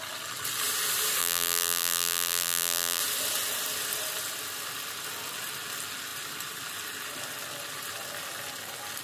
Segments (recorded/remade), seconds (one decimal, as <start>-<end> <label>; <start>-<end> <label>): 0.0-1.2 recorded; 1.2-3.0 remade; 3.0-9.0 recorded